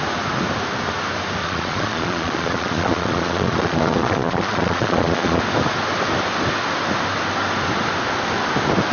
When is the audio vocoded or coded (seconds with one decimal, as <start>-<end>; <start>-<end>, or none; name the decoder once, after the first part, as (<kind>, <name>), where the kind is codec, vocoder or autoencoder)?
1.4-5.4 (vocoder, Vocos)